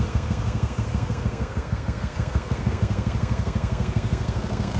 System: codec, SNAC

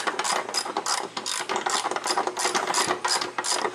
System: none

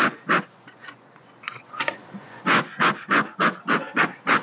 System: vocoder, Vocos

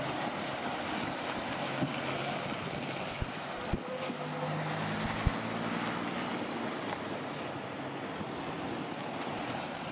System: none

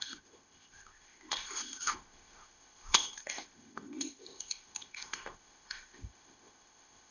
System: codec, ZipCodec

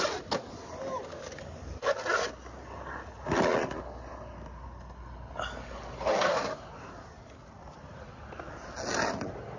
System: none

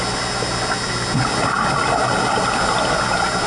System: none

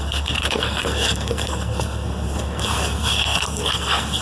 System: codec, SNAC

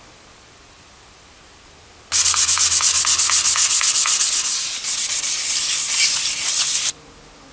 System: none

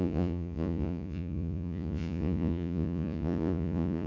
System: vocoder, Vocos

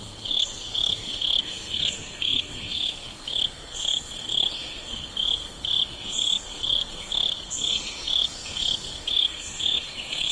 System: codec, SNAC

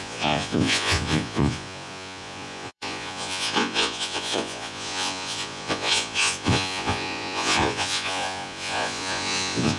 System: vocoder, Vocos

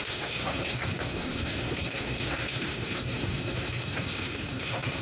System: codec, SNAC